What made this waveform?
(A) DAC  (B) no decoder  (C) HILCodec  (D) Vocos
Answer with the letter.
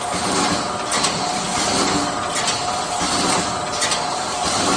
B